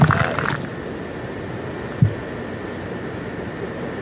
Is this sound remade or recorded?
recorded